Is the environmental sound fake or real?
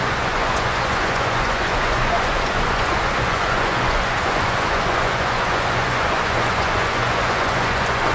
fake